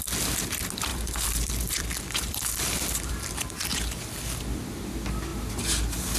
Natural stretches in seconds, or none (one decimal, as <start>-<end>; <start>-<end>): 0.0-0.9; 4.6-6.2

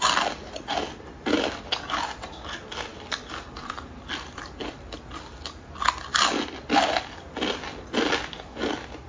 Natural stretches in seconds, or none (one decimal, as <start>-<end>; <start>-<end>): 0.0-9.1

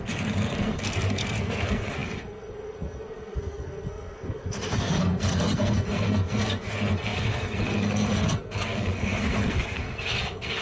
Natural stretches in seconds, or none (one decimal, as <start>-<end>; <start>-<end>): none

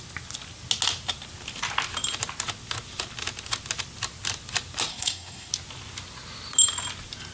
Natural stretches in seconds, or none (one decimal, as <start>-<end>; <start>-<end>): 0.0-4.9; 5.5-7.3

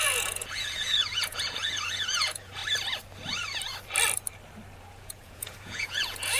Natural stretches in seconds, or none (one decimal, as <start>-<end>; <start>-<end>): 2.6-4.8